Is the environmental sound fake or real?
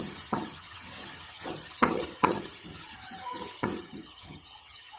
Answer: fake